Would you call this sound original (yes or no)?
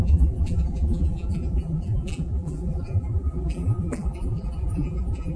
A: no